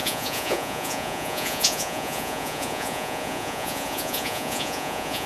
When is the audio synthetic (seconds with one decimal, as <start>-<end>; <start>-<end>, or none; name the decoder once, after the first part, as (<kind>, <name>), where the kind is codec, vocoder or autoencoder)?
0.0-5.3 (vocoder, Vocos)

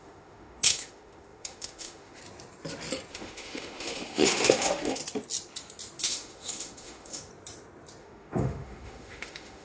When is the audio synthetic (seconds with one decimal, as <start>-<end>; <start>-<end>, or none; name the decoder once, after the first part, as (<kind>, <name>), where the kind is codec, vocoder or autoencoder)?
0.0-2.2 (autoencoder, DAC-VAE); 3.1-5.0; 6.0-7.3; 8.0-9.6

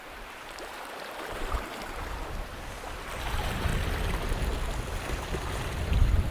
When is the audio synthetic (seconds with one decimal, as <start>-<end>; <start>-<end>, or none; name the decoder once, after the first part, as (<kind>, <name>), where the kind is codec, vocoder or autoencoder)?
0.0-2.5 (vocoder, BigVGAN v2); 3.1-3.7; 5.5-6.3

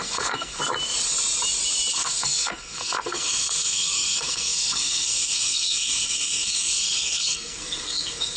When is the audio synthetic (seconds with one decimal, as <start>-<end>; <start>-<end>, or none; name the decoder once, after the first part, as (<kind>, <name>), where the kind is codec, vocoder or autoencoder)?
0.0-0.6 (codec, SNAC); 1.9-8.4

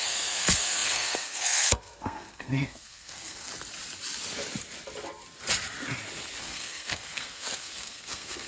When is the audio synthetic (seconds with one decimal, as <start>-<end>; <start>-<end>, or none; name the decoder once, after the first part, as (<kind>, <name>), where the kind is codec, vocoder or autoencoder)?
0.0-3.5 (codec, SNAC); 6.4-8.5